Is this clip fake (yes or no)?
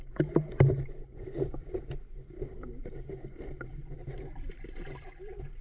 no